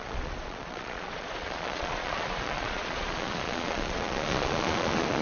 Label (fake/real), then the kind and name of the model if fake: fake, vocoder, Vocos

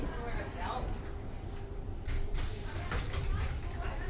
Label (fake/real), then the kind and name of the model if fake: real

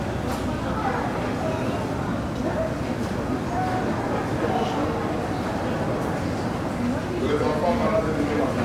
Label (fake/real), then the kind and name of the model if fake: real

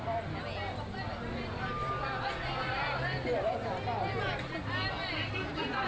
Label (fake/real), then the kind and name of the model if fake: real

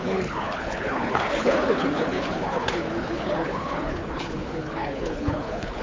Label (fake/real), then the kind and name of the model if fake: fake, codec, HILCodec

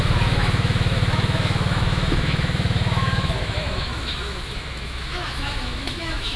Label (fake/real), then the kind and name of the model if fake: fake, autoencoder, DAC-VAE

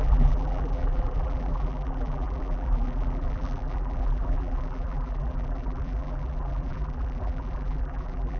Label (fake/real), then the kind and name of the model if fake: fake, vocoder, BigVGAN v2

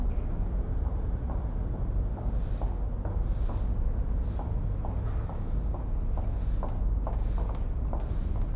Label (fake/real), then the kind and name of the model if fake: real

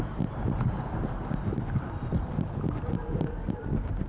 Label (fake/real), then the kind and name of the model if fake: fake, vocoder, BigVGAN v2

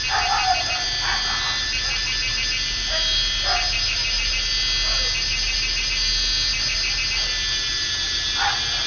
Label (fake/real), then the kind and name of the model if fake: real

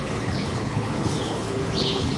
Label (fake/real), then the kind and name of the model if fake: fake, codec, HILCodec